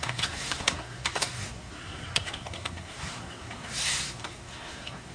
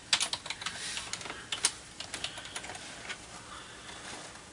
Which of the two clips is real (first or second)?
second